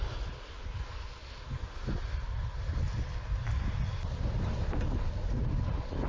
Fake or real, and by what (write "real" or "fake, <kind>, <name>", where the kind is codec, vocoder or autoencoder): real